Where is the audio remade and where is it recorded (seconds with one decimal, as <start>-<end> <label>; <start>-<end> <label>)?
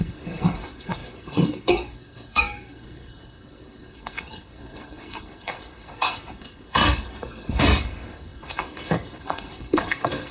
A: 0.0-10.3 remade